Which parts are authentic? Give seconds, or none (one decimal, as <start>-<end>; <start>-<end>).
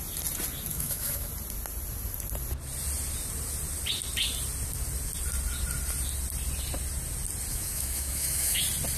0.0-0.7; 1.3-7.5; 8.6-9.0